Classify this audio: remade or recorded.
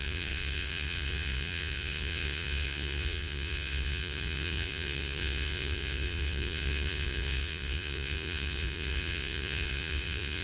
remade